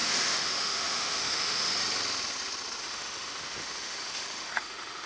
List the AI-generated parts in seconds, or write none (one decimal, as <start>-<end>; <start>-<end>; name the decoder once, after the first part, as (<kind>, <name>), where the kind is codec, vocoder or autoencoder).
0.0-1.7 (autoencoder, DAC-VAE); 2.8-5.1